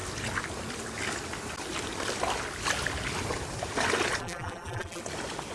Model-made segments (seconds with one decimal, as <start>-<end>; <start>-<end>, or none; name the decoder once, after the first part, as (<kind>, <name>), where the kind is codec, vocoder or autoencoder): 4.2-5.0 (vocoder, BigVGAN v2)